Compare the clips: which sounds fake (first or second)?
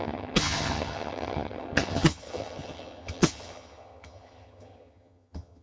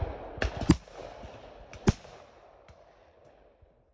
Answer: first